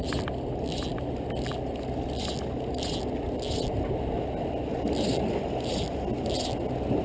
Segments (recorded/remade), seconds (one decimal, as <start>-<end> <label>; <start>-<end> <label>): 0.0-7.0 recorded